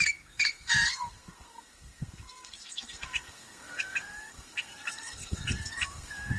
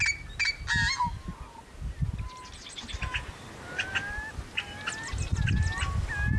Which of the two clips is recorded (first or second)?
second